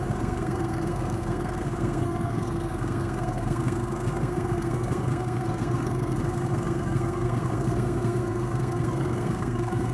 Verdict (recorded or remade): remade